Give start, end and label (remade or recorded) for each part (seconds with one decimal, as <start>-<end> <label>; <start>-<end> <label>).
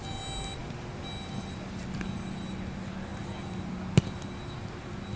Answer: 0.0-5.2 recorded